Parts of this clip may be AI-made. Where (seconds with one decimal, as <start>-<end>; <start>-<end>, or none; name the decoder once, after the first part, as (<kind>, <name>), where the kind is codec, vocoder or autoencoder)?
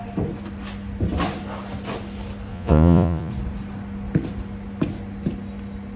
2.5-3.3 (vocoder, Vocos)